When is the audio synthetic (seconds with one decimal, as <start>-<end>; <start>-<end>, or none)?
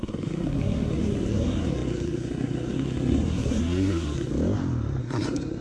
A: 0.0-4.3; 5.0-5.6